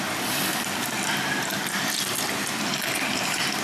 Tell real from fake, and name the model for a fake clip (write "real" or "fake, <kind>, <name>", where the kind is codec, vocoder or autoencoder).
fake, vocoder, BigVGAN v2